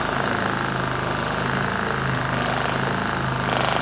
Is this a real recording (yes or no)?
yes